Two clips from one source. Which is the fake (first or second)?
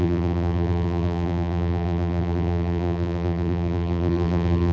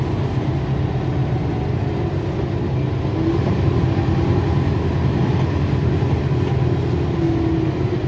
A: first